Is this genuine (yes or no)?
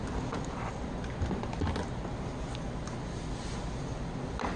yes